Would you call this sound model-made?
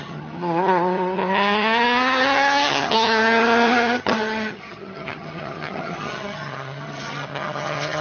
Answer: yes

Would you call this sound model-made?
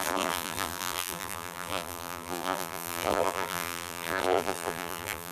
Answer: yes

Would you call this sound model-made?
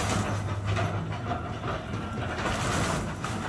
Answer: no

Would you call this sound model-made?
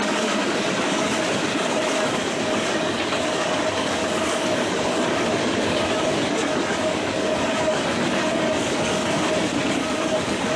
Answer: yes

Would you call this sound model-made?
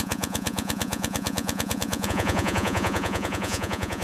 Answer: yes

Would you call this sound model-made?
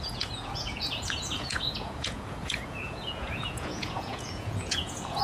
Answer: yes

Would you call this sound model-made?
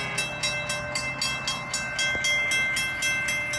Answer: no